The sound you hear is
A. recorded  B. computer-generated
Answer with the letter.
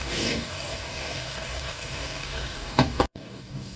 B